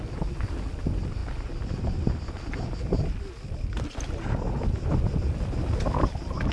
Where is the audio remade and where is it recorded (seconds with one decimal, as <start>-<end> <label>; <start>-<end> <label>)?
0.0-6.5 recorded